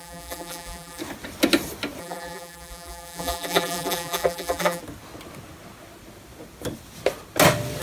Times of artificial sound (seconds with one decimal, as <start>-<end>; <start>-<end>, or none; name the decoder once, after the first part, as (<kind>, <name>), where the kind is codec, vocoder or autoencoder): 0.0-1.0 (vocoder, BigVGAN v2); 2.0-4.8